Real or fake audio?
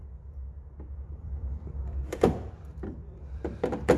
fake